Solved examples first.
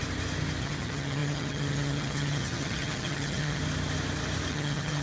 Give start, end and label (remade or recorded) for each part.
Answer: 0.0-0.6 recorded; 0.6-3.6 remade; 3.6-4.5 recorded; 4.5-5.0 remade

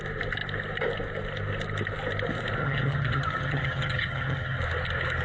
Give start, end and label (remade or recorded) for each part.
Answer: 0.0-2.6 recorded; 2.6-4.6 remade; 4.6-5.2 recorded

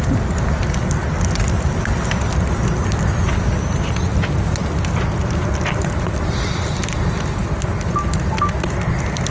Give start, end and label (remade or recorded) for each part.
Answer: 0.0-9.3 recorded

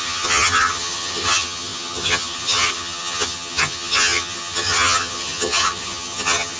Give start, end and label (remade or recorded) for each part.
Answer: 0.0-6.6 remade

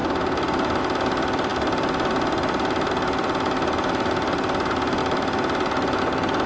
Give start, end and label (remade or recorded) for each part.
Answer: 0.0-6.5 recorded

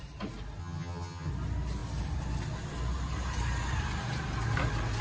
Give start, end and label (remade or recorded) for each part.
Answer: 0.0-0.6 recorded; 0.6-1.3 remade; 1.3-5.0 recorded

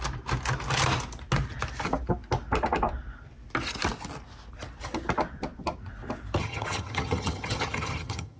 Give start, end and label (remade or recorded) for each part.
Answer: 0.0-6.4 recorded; 6.4-8.4 remade